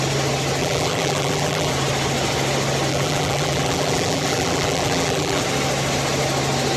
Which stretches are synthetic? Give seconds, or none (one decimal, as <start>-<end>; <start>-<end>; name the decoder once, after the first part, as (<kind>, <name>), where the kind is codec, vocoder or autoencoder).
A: 0.6-1.7 (vocoder, BigVGAN v2); 2.9-5.4